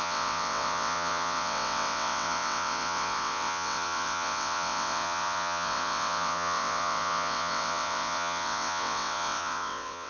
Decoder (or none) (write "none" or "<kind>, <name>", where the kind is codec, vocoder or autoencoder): vocoder, WaveNeXt